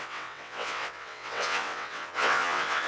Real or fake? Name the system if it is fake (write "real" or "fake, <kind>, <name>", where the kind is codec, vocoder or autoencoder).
fake, vocoder, WaveNeXt